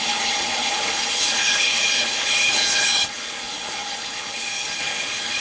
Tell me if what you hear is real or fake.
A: fake